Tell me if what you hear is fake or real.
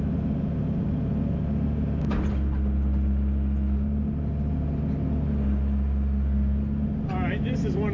real